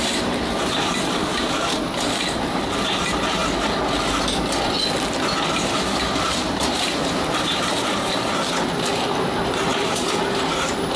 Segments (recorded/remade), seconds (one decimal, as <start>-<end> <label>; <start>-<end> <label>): 0.0-3.4 remade; 3.4-5.5 recorded; 5.5-11.0 remade